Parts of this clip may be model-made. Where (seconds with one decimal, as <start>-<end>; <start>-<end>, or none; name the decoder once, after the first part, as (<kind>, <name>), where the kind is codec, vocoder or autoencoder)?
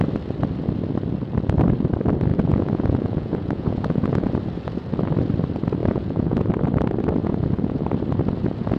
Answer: 2.3-4.3 (vocoder, Vocos); 5.8-6.5; 7.2-7.9